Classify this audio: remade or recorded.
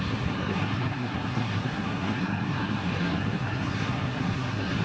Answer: remade